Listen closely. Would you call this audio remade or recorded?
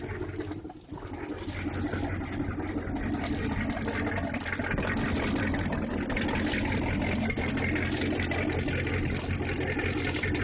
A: recorded